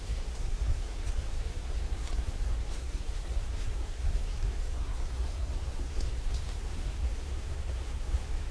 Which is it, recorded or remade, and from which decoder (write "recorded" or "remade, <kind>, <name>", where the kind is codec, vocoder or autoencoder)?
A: remade, codec, SNAC